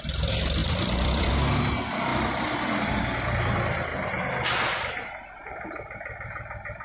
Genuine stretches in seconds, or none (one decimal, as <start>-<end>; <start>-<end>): 0.0-0.6; 1.3-2.1; 2.9-6.8